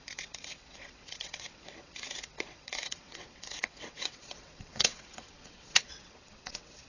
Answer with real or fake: fake